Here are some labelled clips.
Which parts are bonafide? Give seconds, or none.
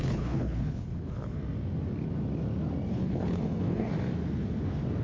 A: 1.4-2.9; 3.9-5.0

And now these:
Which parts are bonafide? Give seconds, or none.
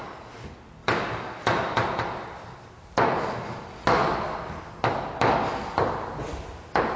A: 0.0-7.0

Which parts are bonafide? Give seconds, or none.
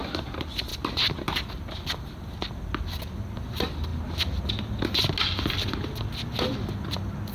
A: 0.0-7.3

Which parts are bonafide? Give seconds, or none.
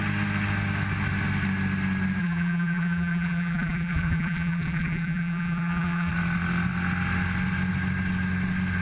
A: 0.0-2.2; 6.1-8.8